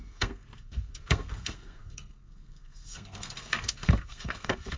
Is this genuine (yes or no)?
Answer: no